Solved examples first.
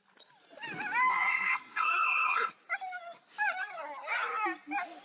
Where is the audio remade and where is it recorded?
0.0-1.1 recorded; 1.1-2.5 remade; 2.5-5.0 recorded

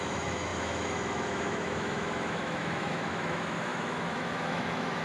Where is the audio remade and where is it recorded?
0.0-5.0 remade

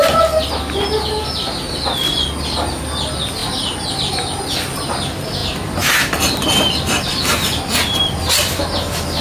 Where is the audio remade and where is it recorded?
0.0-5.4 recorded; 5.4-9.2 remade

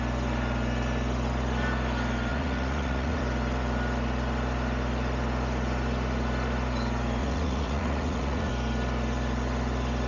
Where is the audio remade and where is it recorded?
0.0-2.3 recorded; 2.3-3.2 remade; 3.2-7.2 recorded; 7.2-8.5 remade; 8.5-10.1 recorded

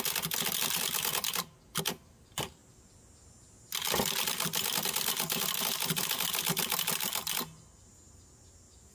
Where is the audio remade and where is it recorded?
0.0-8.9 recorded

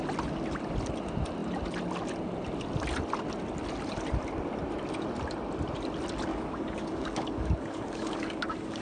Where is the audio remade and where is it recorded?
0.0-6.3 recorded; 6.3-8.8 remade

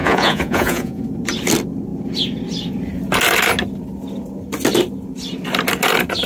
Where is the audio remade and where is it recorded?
0.0-1.0 remade; 1.0-6.3 recorded